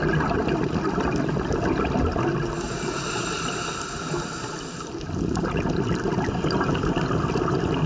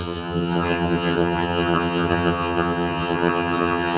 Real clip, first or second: first